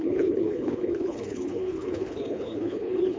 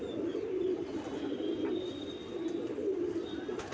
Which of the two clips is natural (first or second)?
second